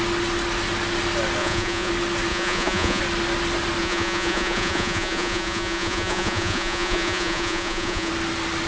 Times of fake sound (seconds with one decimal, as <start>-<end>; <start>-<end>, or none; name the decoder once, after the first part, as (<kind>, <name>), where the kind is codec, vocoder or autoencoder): 1.4-1.9 (vocoder, Vocos); 2.3-3.0; 3.8-8.1